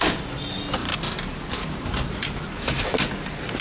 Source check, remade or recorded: recorded